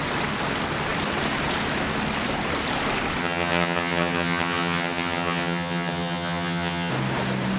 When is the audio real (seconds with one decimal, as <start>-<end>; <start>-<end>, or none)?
0.0-3.2; 6.9-7.6